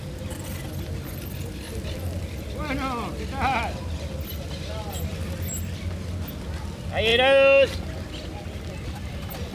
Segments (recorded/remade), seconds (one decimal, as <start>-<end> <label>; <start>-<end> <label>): 0.0-5.1 recorded; 5.1-5.8 remade; 5.8-9.5 recorded